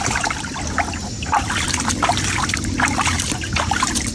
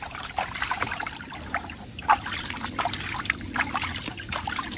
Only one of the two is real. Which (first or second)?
first